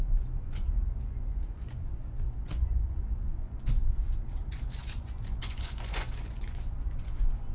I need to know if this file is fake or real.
fake